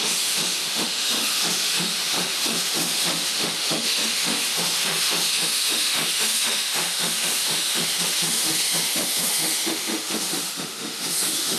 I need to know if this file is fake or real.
fake